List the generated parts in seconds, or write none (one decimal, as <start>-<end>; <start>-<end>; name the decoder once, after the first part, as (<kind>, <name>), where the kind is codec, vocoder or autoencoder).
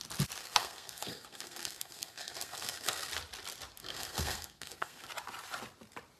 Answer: 0.4-3.1 (codec, SNAC); 3.8-5.1